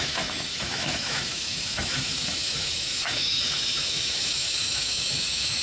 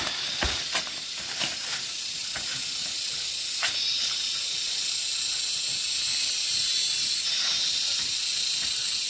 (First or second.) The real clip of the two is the second